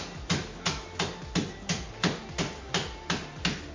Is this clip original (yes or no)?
yes